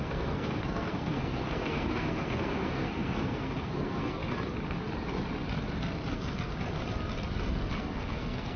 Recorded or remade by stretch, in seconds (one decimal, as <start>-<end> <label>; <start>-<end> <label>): 0.0-4.2 remade; 4.2-6.1 recorded; 6.1-6.5 remade; 6.5-7.8 recorded; 7.8-8.6 remade